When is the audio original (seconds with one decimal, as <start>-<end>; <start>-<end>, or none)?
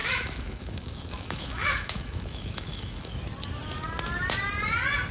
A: 3.1-5.1